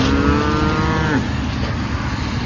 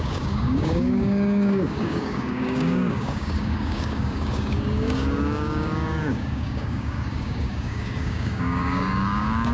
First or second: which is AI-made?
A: second